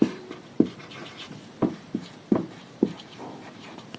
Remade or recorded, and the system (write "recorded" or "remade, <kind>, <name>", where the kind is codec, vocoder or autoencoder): remade, vocoder, BigVGAN v2